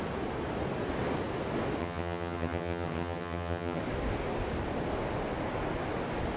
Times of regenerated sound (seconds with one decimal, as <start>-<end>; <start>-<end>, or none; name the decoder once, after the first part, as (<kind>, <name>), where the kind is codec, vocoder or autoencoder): 1.8-3.8 (vocoder, HiFi-GAN)